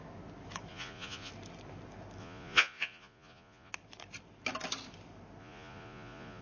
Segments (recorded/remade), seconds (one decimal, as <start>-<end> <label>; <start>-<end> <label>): 0.0-0.7 recorded; 0.7-1.3 remade; 1.3-2.2 recorded; 2.2-3.7 remade; 3.7-5.4 recorded; 5.4-6.4 remade

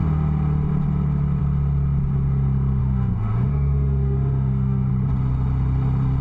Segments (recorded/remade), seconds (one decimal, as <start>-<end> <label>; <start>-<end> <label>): 0.0-2.8 recorded; 2.8-4.9 remade; 4.9-6.2 recorded

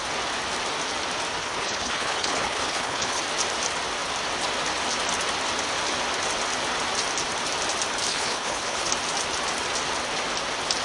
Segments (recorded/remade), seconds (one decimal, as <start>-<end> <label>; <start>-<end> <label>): 0.0-1.4 recorded; 1.4-3.2 remade; 3.2-8.1 recorded; 8.1-8.9 remade; 8.9-10.8 recorded

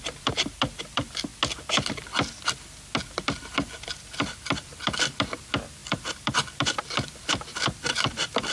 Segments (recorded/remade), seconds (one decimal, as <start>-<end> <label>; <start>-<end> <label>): 0.0-1.3 remade; 1.3-3.1 recorded; 3.1-8.5 remade

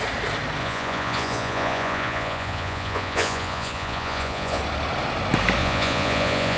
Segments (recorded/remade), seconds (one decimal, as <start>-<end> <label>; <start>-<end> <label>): 0.0-0.6 recorded; 0.6-4.6 remade; 4.6-5.6 recorded; 5.6-6.6 remade